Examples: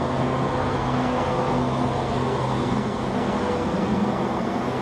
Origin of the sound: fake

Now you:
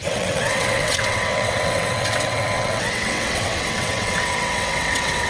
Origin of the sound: fake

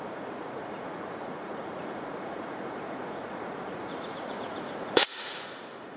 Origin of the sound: fake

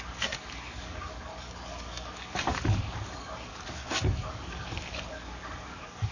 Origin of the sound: fake